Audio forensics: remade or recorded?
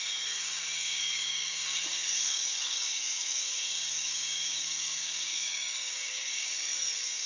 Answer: remade